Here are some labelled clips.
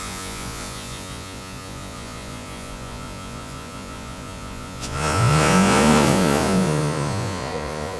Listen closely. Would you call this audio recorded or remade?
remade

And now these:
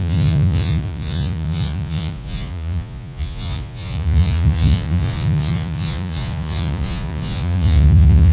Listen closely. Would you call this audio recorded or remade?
remade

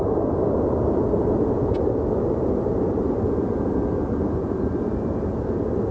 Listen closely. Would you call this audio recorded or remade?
recorded